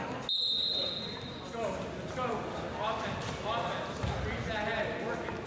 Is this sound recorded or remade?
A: recorded